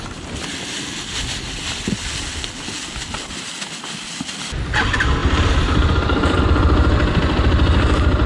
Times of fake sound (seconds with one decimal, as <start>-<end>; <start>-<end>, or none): none